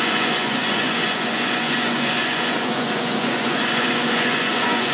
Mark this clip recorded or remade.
remade